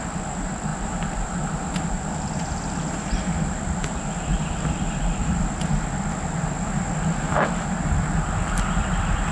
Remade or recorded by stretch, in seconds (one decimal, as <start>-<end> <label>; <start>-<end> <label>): 0.0-0.7 recorded; 0.7-5.4 remade; 5.4-9.3 recorded